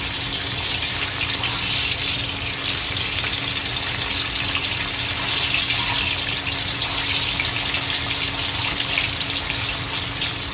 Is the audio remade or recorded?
recorded